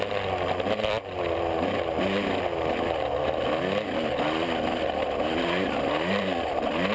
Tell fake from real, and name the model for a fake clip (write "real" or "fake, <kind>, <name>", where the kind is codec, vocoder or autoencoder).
real